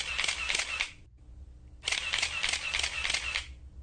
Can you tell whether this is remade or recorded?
recorded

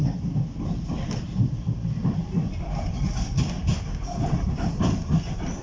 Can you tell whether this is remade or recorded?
recorded